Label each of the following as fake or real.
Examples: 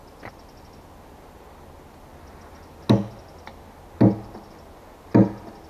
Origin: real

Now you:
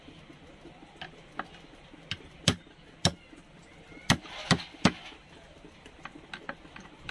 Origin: real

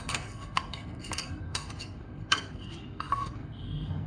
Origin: fake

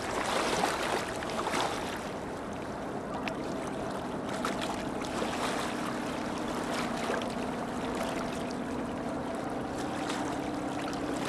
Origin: real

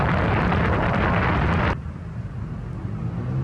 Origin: real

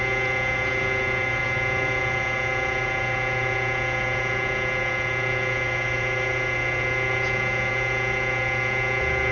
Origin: real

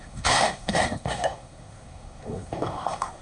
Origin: fake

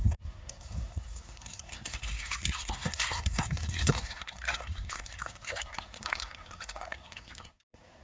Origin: fake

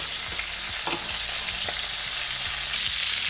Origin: real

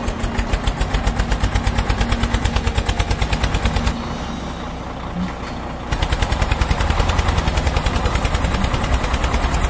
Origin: real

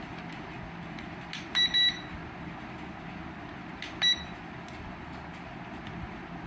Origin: real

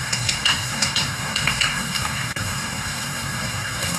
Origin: fake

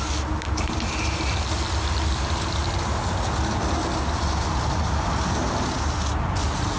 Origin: real